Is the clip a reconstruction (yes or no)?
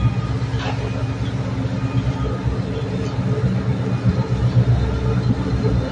no